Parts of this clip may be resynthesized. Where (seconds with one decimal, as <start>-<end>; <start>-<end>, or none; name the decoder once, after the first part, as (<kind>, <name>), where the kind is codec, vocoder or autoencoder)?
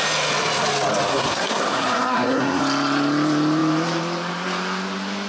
1.1-2.6 (codec, SNAC)